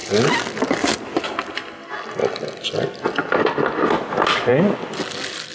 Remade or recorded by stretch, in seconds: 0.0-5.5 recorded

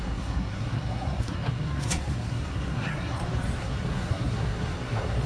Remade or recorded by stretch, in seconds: 0.0-3.2 remade; 3.2-3.6 recorded; 3.6-5.3 remade

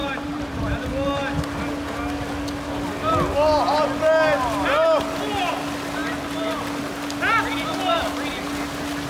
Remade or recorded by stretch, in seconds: 0.0-0.6 remade; 0.6-9.1 recorded